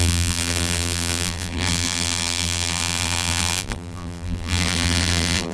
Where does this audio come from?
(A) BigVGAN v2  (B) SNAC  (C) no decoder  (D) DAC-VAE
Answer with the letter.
A